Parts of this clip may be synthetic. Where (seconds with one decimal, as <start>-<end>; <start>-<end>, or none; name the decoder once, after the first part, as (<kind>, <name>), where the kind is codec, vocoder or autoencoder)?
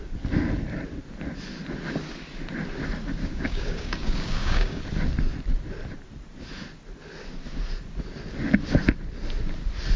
3.2-4.8 (codec, DAC)